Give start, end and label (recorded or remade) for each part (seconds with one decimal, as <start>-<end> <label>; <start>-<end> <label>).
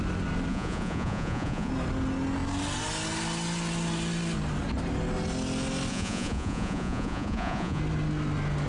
0.0-0.5 recorded; 0.5-1.7 remade; 1.7-5.9 recorded; 5.9-7.8 remade; 7.8-8.7 recorded